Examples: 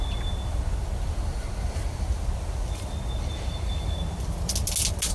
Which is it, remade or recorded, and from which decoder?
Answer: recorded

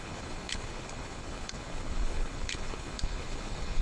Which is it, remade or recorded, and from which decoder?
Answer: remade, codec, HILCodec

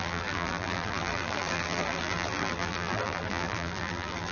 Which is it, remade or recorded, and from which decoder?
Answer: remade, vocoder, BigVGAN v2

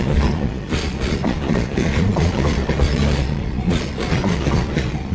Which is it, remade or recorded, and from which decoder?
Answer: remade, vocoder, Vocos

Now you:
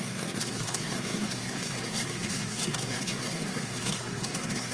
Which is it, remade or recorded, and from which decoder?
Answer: remade, codec, SNAC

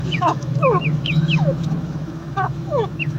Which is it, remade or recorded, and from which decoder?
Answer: remade, autoencoder, DAC-VAE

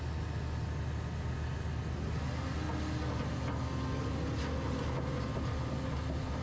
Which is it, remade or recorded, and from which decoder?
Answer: recorded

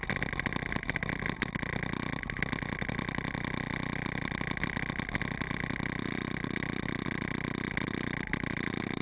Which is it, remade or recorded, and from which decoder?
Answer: recorded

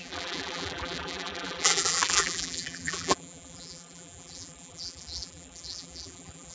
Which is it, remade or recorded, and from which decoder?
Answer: remade, vocoder, BigVGAN v2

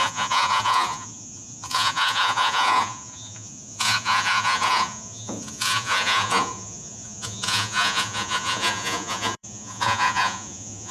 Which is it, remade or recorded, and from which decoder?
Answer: remade, vocoder, Vocos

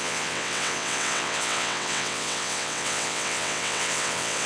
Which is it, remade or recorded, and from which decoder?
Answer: remade, vocoder, WaveNeXt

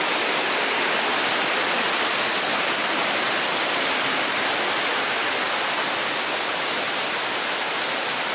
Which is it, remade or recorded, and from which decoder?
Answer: recorded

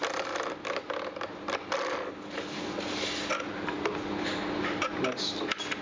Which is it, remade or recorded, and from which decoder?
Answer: recorded